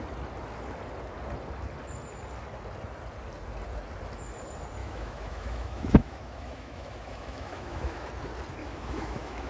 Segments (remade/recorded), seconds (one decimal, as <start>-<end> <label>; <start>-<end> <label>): 0.0-4.8 recorded; 4.8-8.1 remade; 8.1-8.6 recorded; 8.6-9.5 remade